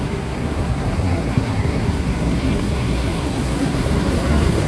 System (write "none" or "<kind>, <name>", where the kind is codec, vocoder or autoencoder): codec, SNAC